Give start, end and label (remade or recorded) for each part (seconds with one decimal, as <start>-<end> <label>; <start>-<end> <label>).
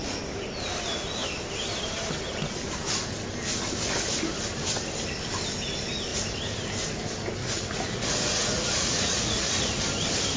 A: 0.0-7.4 recorded; 7.4-9.8 remade; 9.8-10.4 recorded